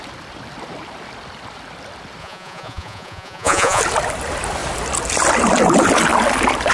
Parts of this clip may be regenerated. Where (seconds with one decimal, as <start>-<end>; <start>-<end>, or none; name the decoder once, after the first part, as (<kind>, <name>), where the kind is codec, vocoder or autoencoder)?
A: 2.2-3.8 (vocoder, Vocos)